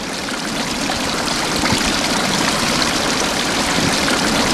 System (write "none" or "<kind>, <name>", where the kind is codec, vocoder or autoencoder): none